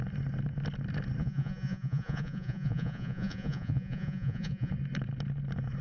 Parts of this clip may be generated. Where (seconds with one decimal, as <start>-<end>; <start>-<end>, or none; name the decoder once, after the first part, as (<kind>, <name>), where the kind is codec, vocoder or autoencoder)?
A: 1.2-4.7 (vocoder, Vocos)